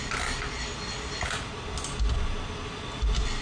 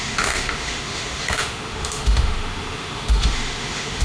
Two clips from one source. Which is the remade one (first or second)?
second